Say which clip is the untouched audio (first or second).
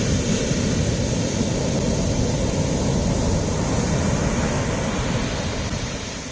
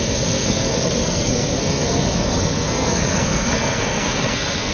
first